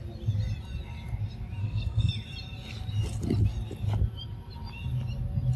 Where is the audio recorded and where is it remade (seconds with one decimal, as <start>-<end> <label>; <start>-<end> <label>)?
0.0-1.6 recorded; 1.6-2.1 remade; 2.1-5.6 recorded